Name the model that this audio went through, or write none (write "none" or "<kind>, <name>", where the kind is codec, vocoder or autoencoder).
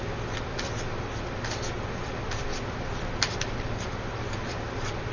none